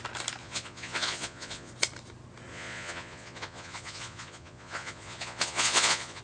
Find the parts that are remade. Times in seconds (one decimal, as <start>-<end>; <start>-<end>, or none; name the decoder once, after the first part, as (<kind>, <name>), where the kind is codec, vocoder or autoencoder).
0.4-1.7 (vocoder, Vocos); 2.5-6.2